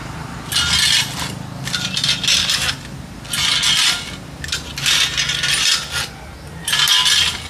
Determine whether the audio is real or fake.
real